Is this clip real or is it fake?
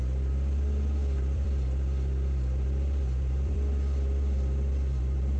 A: fake